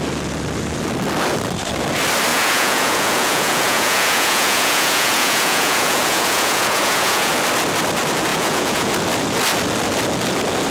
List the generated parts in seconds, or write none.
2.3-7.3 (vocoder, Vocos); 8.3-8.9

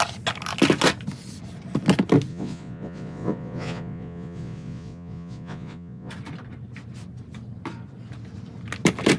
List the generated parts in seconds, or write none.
2.3-6.1 (vocoder, Vocos)

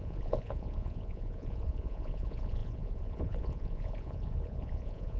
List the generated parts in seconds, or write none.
0.0-5.2 (vocoder, Vocos)

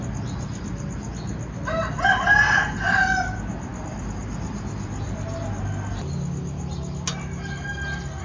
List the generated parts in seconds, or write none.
none

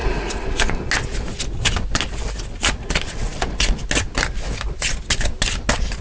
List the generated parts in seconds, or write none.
none

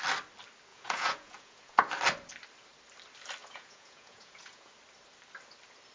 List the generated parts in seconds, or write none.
0.7-1.9 (vocoder, Vocos); 3.4-4.7

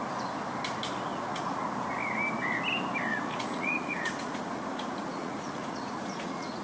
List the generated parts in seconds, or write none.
1.1-1.7 (vocoder, Vocos); 3.1-6.6

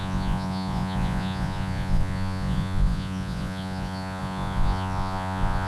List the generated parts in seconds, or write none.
0.0-5.7 (vocoder, Vocos)